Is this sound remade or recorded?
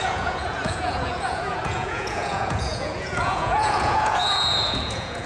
remade